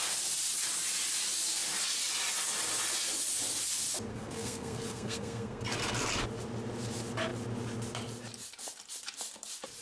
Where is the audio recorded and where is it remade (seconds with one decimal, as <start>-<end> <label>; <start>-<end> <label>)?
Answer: 0.0-4.1 recorded; 4.1-5.6 remade; 5.6-9.8 recorded